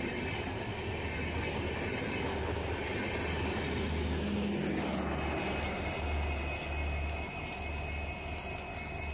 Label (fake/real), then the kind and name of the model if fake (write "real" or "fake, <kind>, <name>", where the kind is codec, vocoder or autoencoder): real